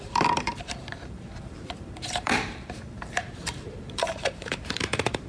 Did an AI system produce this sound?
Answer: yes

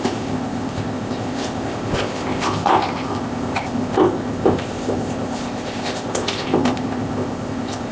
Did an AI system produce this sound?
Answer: yes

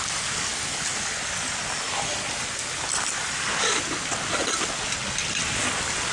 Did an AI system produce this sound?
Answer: no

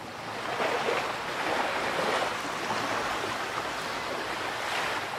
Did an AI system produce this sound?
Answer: no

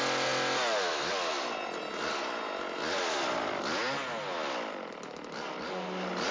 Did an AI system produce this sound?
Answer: no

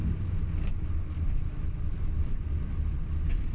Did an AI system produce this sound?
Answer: no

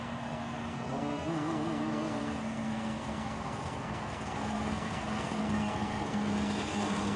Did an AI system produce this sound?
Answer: yes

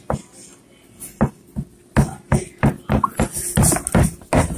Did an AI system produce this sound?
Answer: no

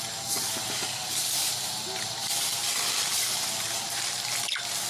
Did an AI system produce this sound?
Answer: no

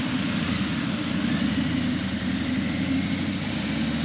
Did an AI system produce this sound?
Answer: no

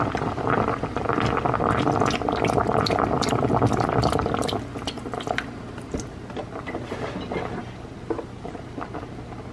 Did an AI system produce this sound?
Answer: no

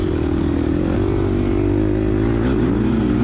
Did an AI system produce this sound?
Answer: no